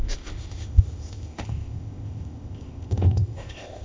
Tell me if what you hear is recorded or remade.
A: remade